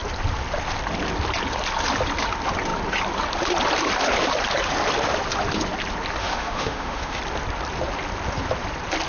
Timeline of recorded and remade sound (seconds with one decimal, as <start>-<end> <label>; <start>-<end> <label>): 0.0-6.2 recorded; 6.2-7.2 remade; 7.2-9.1 recorded